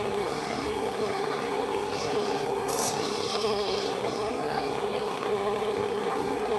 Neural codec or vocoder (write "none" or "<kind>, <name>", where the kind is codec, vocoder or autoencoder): codec, SNAC